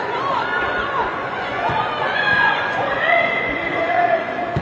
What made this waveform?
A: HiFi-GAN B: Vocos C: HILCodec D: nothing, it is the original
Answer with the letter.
B